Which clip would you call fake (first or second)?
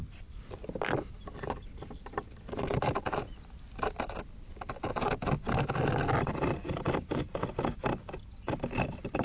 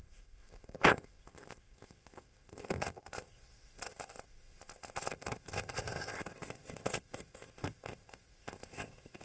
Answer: second